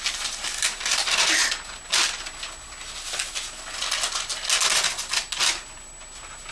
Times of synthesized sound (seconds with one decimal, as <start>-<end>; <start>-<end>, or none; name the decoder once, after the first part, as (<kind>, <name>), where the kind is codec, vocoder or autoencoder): none